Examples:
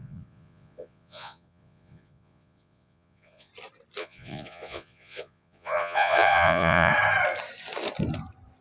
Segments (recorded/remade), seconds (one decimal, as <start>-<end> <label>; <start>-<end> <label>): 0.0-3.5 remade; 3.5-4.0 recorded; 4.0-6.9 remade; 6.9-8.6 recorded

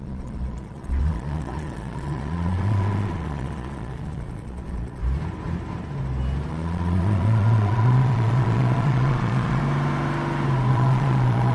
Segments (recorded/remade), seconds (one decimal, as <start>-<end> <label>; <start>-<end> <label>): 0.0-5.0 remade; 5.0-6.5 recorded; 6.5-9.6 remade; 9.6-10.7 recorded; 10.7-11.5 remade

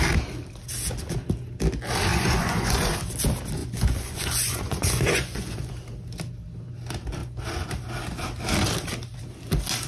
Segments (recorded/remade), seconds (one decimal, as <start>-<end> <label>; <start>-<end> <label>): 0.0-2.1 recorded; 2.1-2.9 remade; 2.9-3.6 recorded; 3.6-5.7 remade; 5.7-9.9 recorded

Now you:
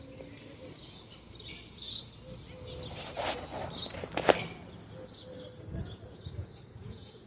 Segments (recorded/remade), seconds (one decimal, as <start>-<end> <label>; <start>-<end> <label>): 0.0-5.8 recorded; 5.8-7.3 remade

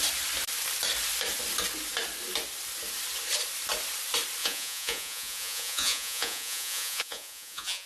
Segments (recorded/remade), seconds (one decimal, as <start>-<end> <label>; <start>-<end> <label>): 0.0-4.4 recorded; 4.4-7.9 remade

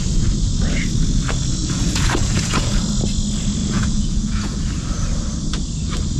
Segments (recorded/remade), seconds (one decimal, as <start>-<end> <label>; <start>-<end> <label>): 0.0-1.6 recorded; 1.6-2.8 remade; 2.8-3.6 recorded; 3.6-4.6 remade; 4.6-6.2 recorded

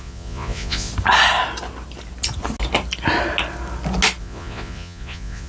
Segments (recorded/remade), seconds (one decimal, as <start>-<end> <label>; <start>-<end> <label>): 0.0-0.9 remade; 0.9-4.2 recorded; 4.2-5.5 remade

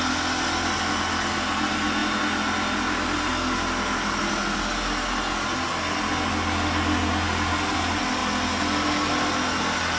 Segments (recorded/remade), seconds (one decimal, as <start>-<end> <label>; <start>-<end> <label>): 0.0-10.0 recorded